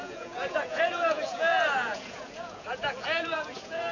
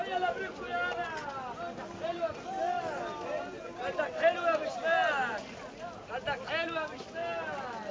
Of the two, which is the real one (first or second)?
second